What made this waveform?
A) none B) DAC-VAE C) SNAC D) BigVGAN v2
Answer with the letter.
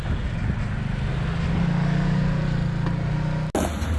A